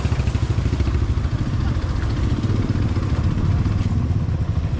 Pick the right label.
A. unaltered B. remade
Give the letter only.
A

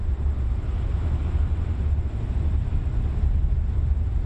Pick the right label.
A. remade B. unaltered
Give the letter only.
B